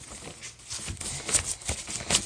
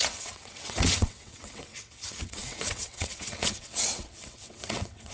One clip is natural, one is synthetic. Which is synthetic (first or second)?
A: second